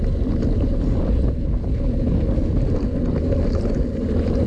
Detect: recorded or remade recorded